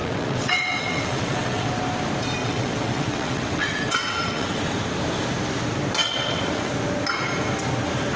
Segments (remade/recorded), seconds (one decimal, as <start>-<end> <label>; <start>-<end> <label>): 0.0-1.7 remade; 1.7-2.4 recorded; 2.4-4.6 remade; 4.6-6.0 recorded; 6.0-6.7 remade; 6.7-8.2 recorded